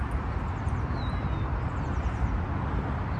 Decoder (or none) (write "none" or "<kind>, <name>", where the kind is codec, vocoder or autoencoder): none